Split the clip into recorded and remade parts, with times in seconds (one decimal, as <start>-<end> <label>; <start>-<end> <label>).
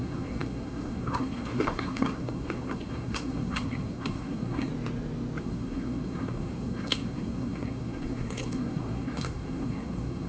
0.0-4.7 remade; 4.7-5.4 recorded; 5.4-10.3 remade